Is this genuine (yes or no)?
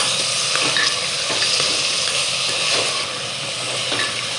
yes